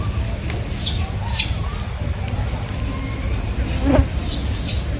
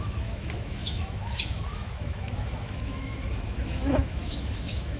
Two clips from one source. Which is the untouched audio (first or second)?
first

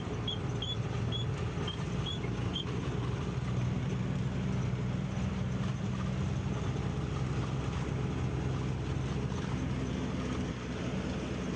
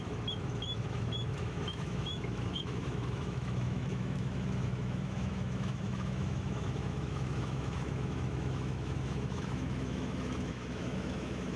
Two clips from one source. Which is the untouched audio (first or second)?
first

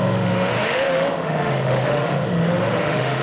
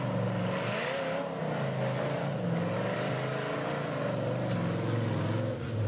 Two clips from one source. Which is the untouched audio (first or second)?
second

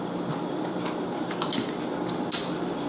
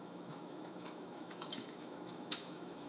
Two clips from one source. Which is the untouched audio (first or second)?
first